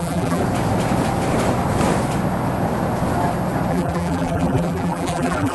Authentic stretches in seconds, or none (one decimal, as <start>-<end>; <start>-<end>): 0.4-3.7